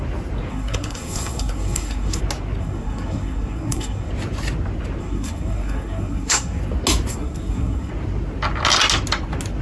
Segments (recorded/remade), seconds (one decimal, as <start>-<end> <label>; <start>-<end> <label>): 0.0-0.5 recorded; 0.5-2.2 remade; 2.2-2.6 recorded; 2.6-4.1 remade; 4.1-5.0 recorded; 5.0-6.6 remade; 6.6-7.1 recorded; 7.1-7.9 remade; 7.9-9.6 recorded